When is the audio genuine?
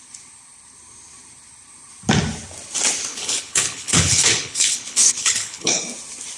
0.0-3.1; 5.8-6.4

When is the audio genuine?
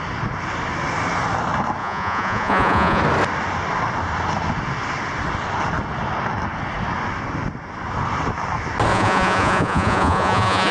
0.0-1.8; 3.0-8.9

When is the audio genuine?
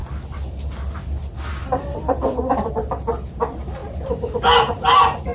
0.0-1.6; 2.7-3.8; 4.4-5.3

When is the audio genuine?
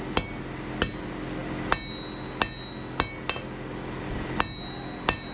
0.0-5.3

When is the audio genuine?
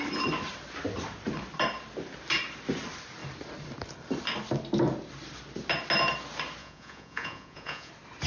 0.0-6.6; 7.9-8.3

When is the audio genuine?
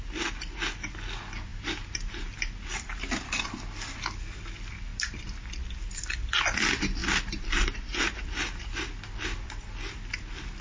0.0-1.5; 2.2-7.0; 8.7-10.6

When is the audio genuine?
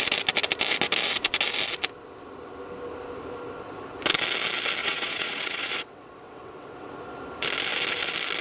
0.0-4.8; 6.9-8.4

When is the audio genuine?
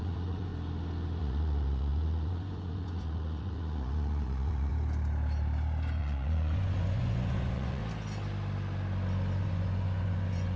0.5-1.2; 4.7-6.0; 7.8-9.4